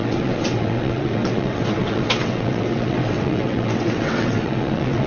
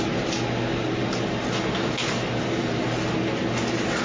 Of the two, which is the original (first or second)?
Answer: second